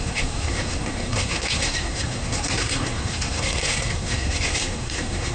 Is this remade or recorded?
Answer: remade